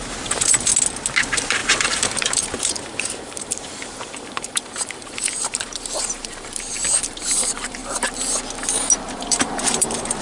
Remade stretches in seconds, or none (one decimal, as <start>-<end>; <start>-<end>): 0.0-0.7; 1.2-7.8; 9.0-10.2